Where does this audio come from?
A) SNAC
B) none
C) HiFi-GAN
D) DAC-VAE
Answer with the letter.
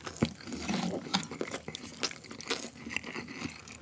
B